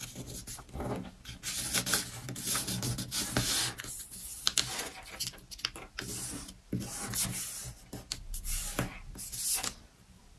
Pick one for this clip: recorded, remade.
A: recorded